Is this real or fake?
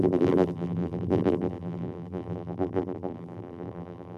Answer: fake